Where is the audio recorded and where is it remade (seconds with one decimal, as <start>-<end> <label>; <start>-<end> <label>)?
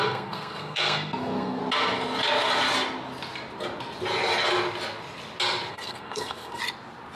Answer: 0.0-1.6 remade; 1.6-5.7 recorded; 5.7-6.6 remade; 6.6-7.2 recorded